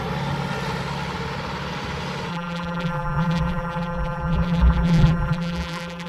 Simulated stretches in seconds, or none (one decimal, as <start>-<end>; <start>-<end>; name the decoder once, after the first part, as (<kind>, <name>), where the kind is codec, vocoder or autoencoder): 2.3-6.1 (vocoder, BigVGAN v2)